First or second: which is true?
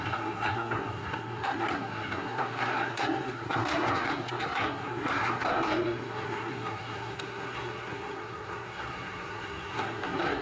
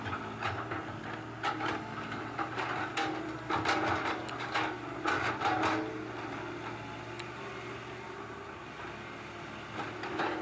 second